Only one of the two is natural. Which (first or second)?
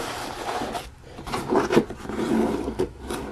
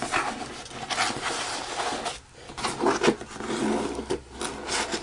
second